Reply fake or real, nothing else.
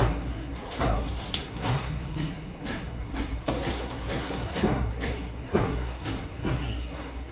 fake